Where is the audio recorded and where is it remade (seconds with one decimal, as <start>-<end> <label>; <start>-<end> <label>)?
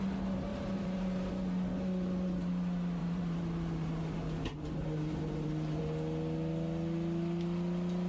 0.0-0.5 recorded; 0.5-1.3 remade; 1.3-3.0 recorded; 3.0-5.8 remade; 5.8-8.1 recorded